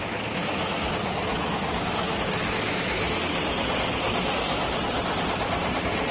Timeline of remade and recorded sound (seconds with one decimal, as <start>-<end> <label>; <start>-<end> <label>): 0.0-1.3 recorded; 1.3-3.2 remade; 3.2-6.1 recorded